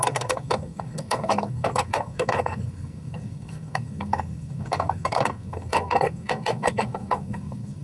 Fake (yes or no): yes